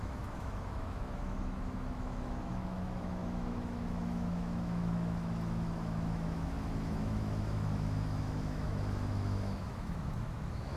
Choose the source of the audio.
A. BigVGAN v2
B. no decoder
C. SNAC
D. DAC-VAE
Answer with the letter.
D